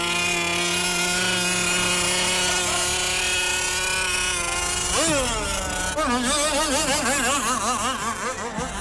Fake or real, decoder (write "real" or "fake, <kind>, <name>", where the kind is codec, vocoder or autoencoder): real